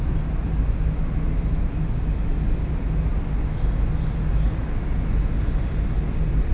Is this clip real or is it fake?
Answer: real